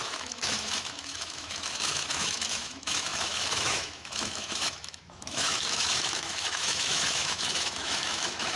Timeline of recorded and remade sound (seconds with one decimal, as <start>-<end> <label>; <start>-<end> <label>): 0.0-8.6 remade